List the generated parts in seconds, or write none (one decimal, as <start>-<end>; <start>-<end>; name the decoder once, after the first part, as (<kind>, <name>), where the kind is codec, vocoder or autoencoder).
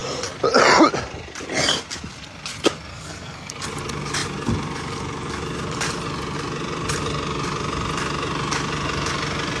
2.9-3.5 (codec, SNAC)